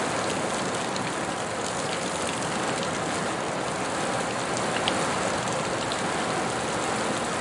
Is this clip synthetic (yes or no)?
no